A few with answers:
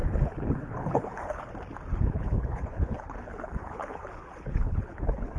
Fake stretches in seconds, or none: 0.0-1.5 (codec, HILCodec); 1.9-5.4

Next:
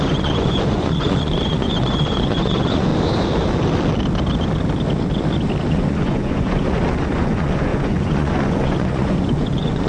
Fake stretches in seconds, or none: 0.0-2.9 (vocoder, Vocos); 5.7-9.9